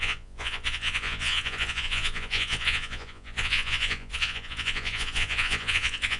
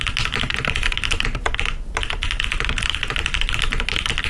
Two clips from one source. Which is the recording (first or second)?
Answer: second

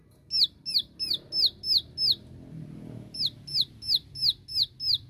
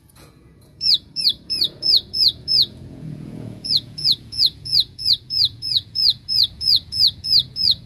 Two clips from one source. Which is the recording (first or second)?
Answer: first